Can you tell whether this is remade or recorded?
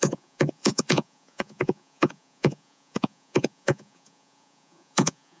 remade